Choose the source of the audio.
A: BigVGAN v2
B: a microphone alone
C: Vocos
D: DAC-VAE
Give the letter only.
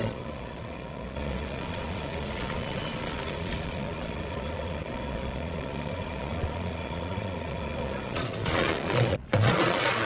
C